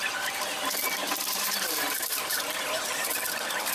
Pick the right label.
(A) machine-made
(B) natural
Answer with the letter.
A